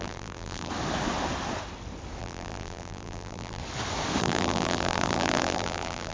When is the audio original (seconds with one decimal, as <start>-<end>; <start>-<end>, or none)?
0.7-2.2; 3.6-4.2